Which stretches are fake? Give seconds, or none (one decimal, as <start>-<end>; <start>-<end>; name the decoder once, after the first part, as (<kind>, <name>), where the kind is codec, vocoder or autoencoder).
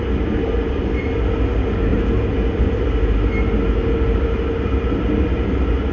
none